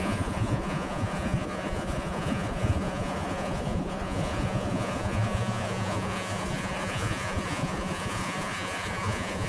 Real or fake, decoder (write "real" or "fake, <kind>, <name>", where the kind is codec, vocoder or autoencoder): fake, vocoder, Vocos